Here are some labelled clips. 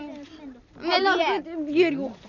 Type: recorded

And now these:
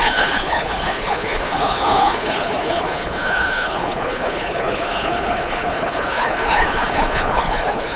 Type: remade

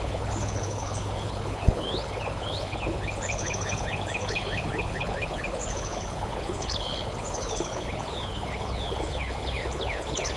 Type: remade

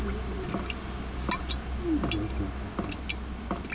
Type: recorded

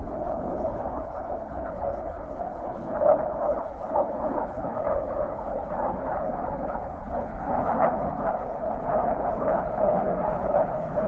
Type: remade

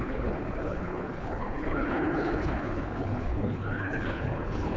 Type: remade